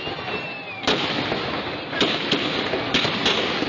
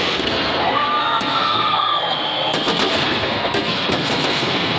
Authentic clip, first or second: first